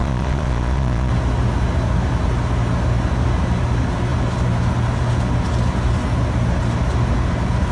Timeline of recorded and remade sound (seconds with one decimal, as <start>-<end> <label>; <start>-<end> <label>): 0.0-1.1 remade; 1.1-7.7 recorded